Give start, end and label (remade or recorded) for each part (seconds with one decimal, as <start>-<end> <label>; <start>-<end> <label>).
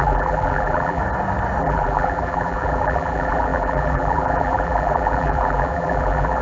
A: 0.0-1.0 remade; 1.0-1.6 recorded; 1.6-6.4 remade